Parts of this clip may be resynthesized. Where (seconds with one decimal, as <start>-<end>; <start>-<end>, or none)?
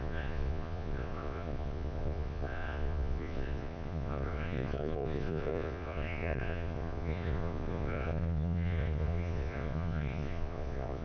0.0-11.0